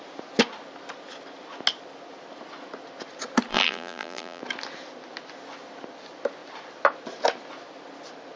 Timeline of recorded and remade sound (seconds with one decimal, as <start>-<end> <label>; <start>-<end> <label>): 0.0-3.5 recorded; 3.5-4.4 remade; 4.4-8.4 recorded